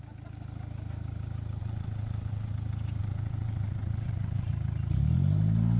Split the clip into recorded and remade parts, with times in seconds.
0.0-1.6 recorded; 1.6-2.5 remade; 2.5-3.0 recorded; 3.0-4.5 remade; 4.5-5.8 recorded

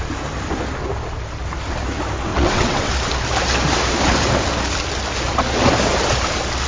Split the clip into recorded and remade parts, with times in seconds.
0.0-2.3 recorded; 2.3-2.9 remade; 2.9-6.7 recorded

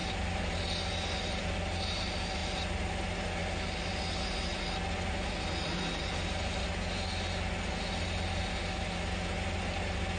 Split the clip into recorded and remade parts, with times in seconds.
0.0-10.2 recorded